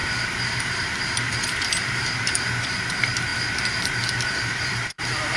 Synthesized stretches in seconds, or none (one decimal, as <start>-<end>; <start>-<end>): 0.0-5.4